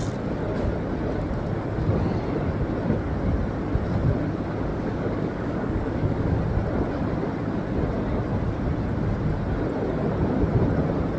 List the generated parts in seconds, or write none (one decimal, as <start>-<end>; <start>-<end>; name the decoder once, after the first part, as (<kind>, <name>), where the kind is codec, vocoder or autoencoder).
4.7-6.4 (codec, DAC)